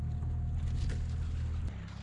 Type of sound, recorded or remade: recorded